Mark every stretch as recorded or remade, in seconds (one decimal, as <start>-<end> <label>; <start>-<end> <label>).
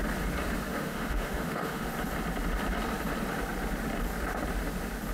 0.0-0.7 recorded; 0.7-1.9 remade; 1.9-5.1 recorded